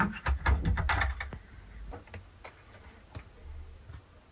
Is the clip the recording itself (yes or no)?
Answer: yes